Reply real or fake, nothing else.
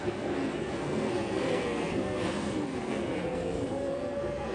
fake